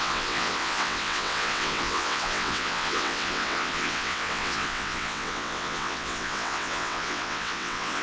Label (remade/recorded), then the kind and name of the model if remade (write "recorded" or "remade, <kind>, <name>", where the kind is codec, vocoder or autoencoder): remade, vocoder, WaveNeXt